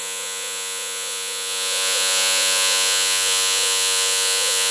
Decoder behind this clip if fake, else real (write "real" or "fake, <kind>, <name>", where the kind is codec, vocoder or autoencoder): fake, vocoder, Vocos